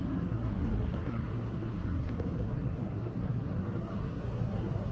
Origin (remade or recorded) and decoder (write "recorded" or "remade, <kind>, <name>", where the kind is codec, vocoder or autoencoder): remade, codec, SNAC